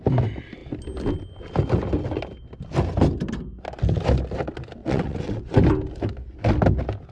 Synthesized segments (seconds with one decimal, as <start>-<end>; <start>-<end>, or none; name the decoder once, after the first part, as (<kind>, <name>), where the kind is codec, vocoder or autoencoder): 4.8-5.6 (vocoder, WaveNeXt)